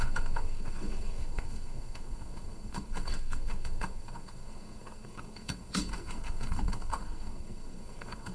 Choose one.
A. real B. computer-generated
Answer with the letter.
B